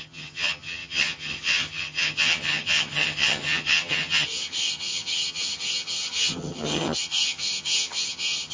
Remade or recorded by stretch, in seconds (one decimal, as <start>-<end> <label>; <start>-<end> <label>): 0.0-8.5 remade